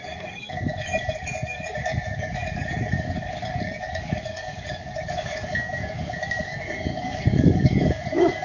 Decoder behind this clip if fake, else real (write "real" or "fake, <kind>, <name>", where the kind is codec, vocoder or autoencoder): fake, codec, DAC